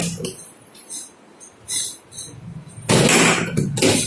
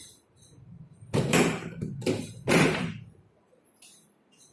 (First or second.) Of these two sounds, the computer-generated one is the second